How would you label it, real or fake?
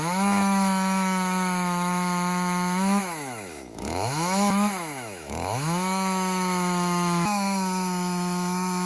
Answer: fake